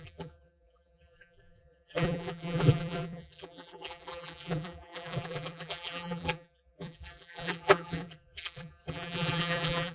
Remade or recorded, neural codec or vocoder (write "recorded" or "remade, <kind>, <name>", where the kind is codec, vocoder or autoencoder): remade, vocoder, BigVGAN v2